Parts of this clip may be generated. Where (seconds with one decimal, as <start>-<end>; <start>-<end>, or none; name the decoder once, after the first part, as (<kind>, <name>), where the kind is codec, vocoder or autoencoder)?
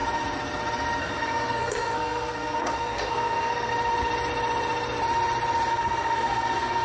1.0-3.7 (codec, SNAC); 5.7-6.8